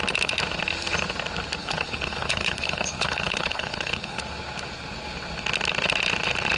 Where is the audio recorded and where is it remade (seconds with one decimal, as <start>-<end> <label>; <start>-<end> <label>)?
0.0-1.6 recorded; 1.6-4.2 remade; 4.2-6.6 recorded